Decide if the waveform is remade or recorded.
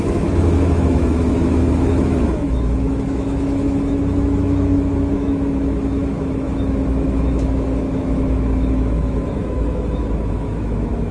remade